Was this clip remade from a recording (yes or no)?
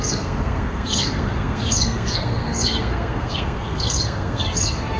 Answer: yes